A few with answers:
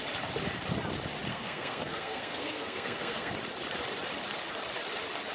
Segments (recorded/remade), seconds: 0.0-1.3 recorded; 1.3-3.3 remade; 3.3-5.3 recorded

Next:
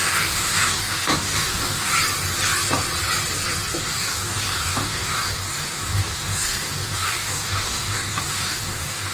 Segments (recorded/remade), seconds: 0.0-1.9 remade; 1.9-3.8 recorded; 3.8-9.1 remade

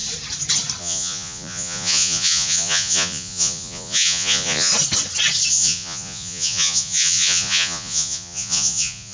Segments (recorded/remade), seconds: 0.0-0.8 recorded; 0.8-4.7 remade; 4.7-5.5 recorded; 5.5-9.1 remade

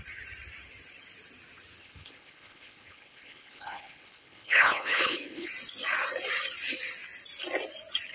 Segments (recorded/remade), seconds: 0.0-1.8 recorded; 1.8-5.5 remade; 5.5-8.1 recorded